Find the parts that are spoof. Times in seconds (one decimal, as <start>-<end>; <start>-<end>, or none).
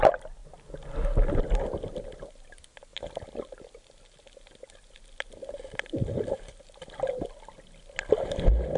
none